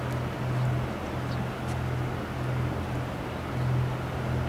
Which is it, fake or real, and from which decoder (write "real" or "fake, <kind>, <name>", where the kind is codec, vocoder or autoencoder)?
real